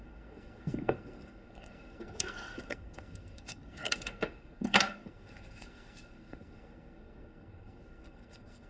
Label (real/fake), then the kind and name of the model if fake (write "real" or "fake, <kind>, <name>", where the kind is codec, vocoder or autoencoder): fake, codec, SNAC